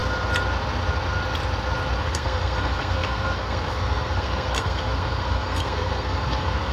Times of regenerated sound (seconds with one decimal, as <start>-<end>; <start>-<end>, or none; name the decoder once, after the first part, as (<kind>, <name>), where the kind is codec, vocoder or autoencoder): 2.0-6.7 (codec, SNAC)